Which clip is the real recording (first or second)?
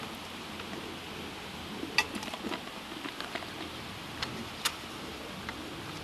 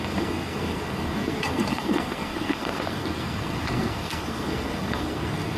first